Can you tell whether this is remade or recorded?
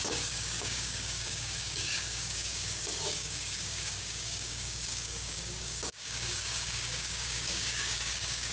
remade